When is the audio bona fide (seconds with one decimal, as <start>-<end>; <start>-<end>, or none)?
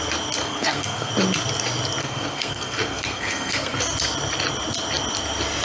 0.0-0.4; 1.1-2.0; 3.8-5.6